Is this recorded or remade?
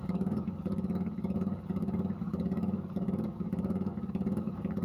remade